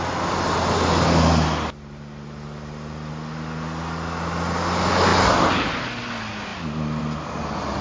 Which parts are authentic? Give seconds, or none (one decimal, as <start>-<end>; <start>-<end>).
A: 0.0-7.8